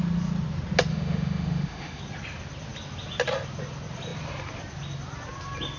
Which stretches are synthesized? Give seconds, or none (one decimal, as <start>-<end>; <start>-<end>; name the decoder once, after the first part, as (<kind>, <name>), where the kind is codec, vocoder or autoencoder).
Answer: 0.9-2.0 (autoencoder, DAC-VAE)